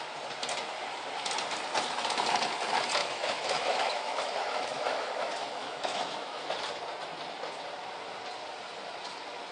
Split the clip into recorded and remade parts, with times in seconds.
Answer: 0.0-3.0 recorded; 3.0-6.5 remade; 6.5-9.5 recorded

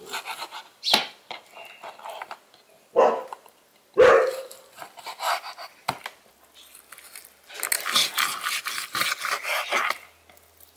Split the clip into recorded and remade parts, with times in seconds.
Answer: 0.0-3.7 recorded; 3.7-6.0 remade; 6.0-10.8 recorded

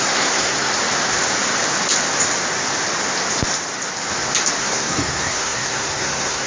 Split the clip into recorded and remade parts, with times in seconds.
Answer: 0.0-0.7 remade; 0.7-4.6 recorded; 4.6-6.5 remade

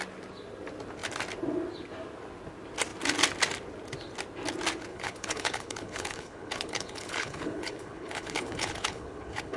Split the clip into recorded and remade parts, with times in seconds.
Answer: 0.0-4.9 recorded; 4.9-9.6 remade

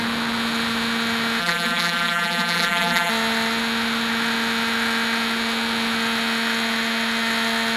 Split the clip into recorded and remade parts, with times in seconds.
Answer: 0.0-1.4 recorded; 1.4-3.1 remade; 3.1-7.8 recorded